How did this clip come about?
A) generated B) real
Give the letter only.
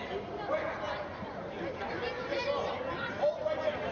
B